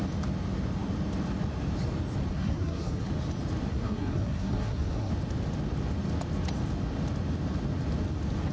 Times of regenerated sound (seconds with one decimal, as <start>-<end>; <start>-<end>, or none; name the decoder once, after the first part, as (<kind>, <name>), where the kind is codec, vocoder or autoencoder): 2.3-3.1 (codec, SNAC); 3.7-5.1